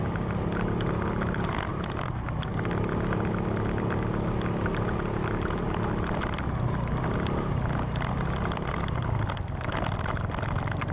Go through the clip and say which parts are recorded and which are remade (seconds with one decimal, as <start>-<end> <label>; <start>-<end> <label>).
0.0-10.9 recorded